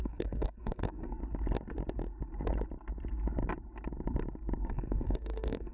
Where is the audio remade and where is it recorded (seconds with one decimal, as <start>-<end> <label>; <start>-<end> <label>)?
0.0-1.2 remade; 1.2-4.6 recorded; 4.6-5.7 remade